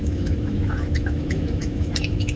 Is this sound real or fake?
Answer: fake